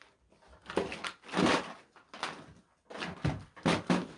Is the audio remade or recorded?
recorded